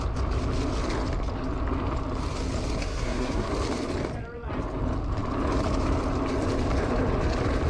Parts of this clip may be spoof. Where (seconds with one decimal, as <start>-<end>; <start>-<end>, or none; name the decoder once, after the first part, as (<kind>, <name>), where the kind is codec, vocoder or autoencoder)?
2.8-3.5 (codec, SNAC)